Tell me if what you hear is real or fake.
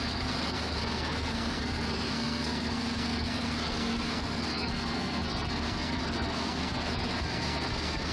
fake